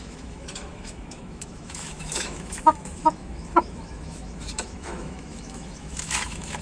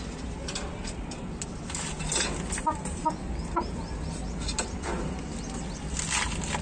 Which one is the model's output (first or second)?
first